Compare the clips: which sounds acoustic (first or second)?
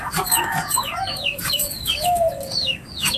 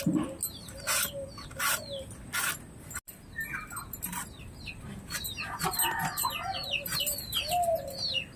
second